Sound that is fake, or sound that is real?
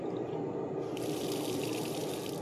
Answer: fake